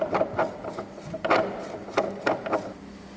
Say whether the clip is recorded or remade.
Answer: recorded